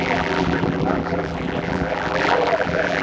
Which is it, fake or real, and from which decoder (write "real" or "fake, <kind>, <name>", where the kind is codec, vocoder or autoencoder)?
fake, vocoder, BigVGAN v2